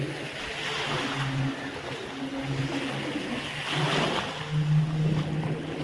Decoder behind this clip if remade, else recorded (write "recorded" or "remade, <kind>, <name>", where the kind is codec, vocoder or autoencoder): recorded